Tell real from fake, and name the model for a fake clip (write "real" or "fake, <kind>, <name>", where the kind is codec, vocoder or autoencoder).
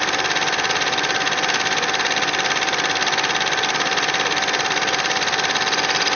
real